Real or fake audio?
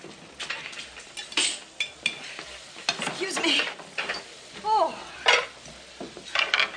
real